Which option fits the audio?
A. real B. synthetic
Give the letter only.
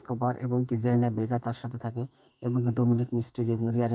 B